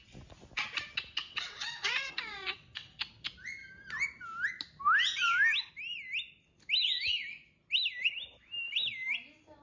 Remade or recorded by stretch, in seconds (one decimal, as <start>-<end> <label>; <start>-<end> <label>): 0.0-1.2 recorded; 1.2-3.0 remade; 3.0-9.6 recorded